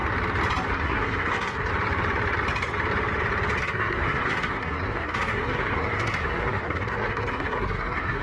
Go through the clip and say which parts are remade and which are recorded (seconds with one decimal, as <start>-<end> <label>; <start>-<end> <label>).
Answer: 0.0-0.7 recorded; 0.7-1.7 remade; 1.7-3.6 recorded; 3.6-8.2 remade